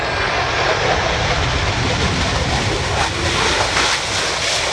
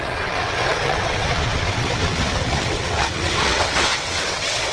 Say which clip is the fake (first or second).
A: second